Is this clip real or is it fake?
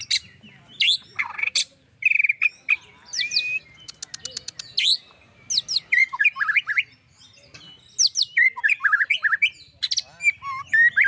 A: real